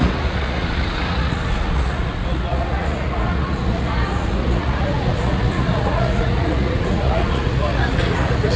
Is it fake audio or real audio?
fake